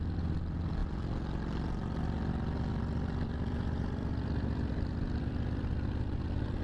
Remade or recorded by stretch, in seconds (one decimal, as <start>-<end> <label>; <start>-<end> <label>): 0.0-0.8 remade; 0.8-2.7 recorded; 2.7-6.6 remade